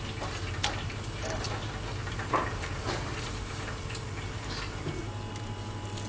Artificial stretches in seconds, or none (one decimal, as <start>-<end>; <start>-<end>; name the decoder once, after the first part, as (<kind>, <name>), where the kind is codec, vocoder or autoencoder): 2.0-3.8 (vocoder, BigVGAN v2)